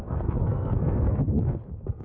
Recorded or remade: remade